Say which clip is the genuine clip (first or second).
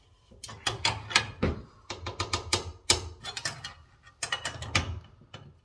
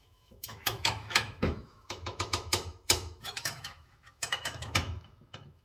first